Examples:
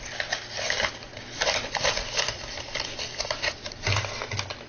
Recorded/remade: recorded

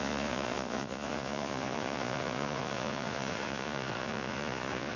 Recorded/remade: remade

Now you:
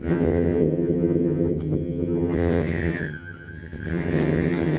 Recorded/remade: remade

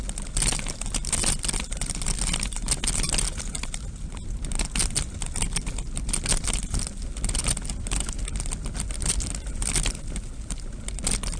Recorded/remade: recorded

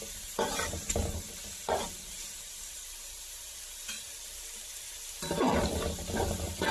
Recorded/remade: recorded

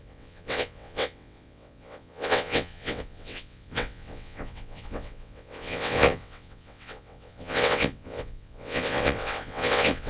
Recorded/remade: remade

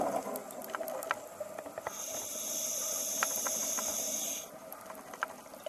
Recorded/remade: recorded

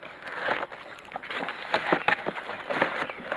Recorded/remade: recorded